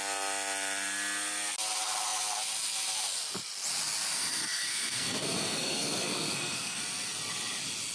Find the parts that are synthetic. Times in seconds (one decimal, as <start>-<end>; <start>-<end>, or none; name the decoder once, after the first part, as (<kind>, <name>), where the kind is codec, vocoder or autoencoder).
4.1-6.8 (codec, SNAC)